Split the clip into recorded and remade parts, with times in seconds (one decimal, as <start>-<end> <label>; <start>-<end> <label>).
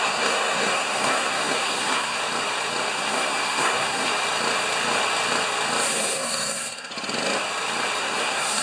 0.0-2.2 remade; 2.2-2.9 recorded; 2.9-4.1 remade; 4.1-5.9 recorded; 5.9-6.9 remade; 6.9-8.0 recorded; 8.0-8.6 remade